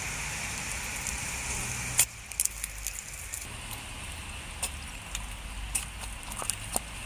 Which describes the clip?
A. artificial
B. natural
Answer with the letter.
B